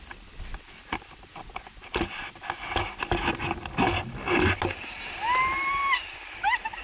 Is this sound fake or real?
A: real